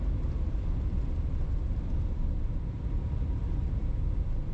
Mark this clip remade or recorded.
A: remade